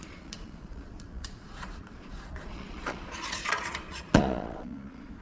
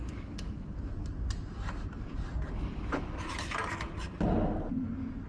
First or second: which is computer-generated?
first